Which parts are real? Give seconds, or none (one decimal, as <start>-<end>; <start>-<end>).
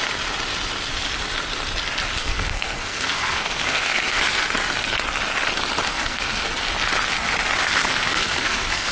0.0-2.2; 4.2-5.9; 6.5-7.8